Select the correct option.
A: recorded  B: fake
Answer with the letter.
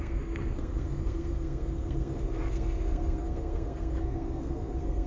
B